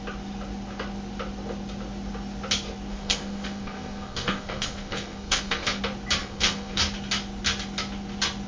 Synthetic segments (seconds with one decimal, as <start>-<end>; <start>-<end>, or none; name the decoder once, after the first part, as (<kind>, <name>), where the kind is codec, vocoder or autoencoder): 2.9-5.8 (codec, SNAC); 6.2-6.8